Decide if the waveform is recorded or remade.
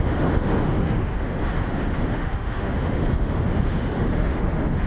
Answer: remade